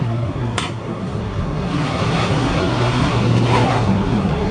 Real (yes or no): no